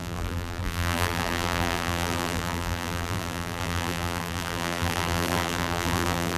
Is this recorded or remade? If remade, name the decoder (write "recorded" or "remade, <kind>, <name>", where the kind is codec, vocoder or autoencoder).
remade, vocoder, BigVGAN v2